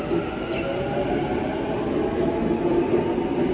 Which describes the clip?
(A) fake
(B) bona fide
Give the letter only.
B